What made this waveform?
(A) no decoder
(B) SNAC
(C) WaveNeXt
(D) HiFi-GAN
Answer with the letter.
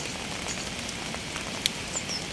A